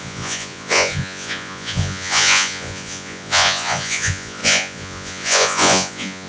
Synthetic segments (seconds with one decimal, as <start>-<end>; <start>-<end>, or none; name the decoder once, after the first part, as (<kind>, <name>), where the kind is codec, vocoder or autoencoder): 0.0-6.3 (vocoder, Vocos)

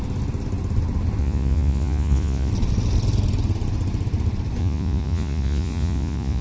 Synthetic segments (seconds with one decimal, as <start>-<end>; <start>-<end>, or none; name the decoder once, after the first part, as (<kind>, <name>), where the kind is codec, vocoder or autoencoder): 1.2-2.5 (vocoder, Vocos); 4.6-6.4

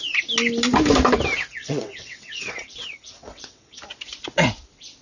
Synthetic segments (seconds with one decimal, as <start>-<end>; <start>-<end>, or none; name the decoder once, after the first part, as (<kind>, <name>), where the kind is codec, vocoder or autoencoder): 1.6-3.8 (vocoder, WaveNeXt)

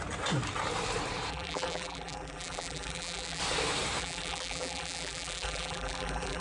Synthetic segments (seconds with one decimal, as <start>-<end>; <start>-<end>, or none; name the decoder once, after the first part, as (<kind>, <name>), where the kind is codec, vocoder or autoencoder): 1.3-3.4 (vocoder, BigVGAN v2); 4.0-6.4

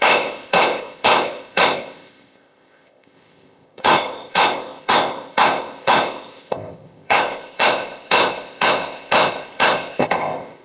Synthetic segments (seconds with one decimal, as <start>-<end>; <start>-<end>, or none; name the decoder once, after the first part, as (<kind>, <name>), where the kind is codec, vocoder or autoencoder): 0.0-10.6 (codec, ZipCodec)